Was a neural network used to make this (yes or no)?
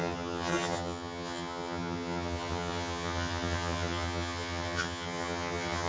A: yes